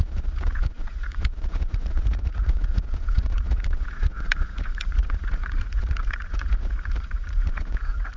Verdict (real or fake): fake